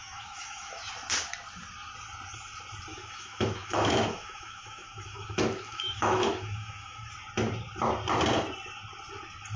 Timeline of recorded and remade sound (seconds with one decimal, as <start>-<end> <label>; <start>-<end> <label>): 0.0-0.8 remade; 0.8-2.9 recorded; 2.9-7.1 remade; 7.1-9.6 recorded